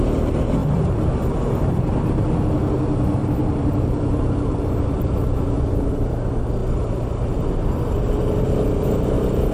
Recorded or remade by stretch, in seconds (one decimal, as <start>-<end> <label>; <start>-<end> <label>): 0.0-0.6 recorded; 0.6-1.9 remade; 1.9-3.2 recorded; 3.2-6.0 remade; 6.0-9.5 recorded